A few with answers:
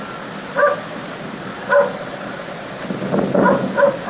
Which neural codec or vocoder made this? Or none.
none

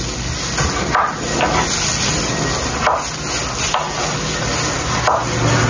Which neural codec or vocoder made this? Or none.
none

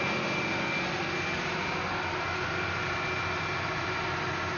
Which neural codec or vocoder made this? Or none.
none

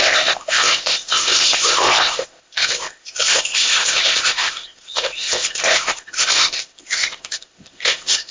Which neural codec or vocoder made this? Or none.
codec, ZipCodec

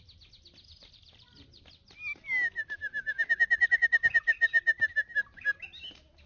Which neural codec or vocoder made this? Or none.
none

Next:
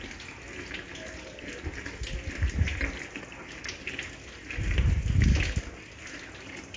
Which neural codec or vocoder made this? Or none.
none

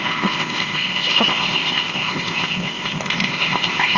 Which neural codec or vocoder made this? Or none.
codec, ZipCodec